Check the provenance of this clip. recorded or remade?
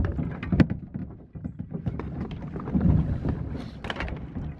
recorded